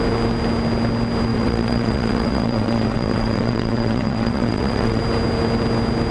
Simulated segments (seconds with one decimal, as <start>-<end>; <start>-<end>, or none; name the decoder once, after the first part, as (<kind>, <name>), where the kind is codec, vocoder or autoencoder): 1.3-5.0 (vocoder, WaveNeXt)